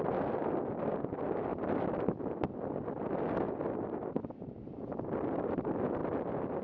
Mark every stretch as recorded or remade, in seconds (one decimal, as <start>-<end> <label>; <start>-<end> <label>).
0.0-1.5 recorded; 1.5-5.5 remade; 5.5-6.6 recorded